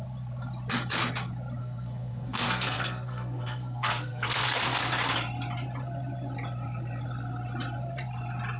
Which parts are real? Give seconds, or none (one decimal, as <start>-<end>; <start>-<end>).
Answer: 0.0-1.6; 4.8-8.6